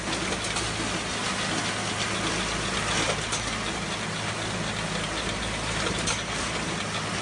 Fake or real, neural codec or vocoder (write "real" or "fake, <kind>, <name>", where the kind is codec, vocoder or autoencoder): real